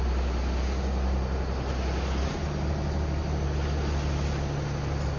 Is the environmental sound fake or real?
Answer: real